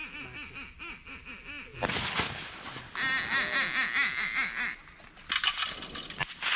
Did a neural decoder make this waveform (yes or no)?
no